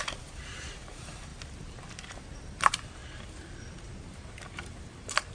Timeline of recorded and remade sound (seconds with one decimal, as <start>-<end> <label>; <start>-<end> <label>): 0.0-1.3 remade; 1.3-2.4 recorded; 2.4-3.0 remade; 3.0-3.9 recorded; 3.9-5.3 remade